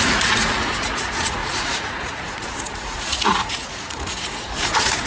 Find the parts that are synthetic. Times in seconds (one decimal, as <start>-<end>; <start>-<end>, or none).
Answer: 0.0-5.1